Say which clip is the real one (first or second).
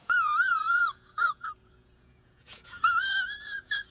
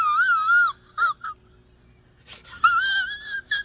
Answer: second